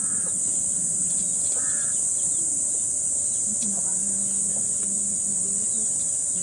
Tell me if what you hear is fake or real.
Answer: real